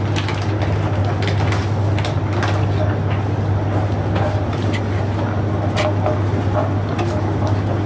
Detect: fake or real real